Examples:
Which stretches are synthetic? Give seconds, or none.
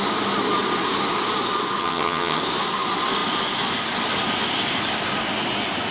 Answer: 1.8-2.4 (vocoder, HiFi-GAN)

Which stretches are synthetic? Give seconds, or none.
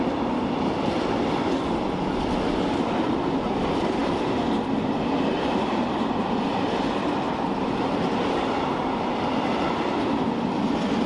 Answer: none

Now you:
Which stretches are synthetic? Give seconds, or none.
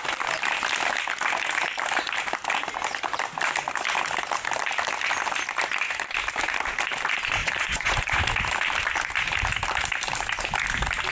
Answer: 7.4-8.2 (vocoder, Vocos)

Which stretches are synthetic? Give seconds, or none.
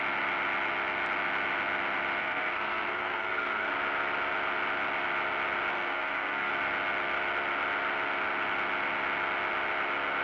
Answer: 2.2-3.7 (codec, SNAC); 5.7-6.5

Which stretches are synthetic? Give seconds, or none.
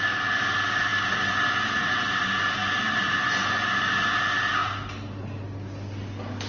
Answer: none